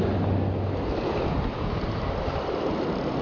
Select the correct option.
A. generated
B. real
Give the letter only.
B